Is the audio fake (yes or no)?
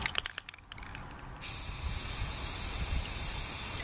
no